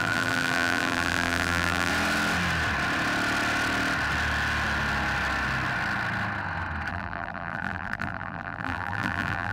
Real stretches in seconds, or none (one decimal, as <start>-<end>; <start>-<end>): 1.9-6.9